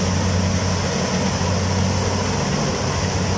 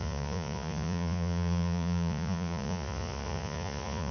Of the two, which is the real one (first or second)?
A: first